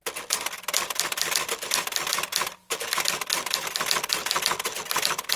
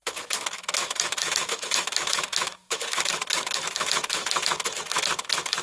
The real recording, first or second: first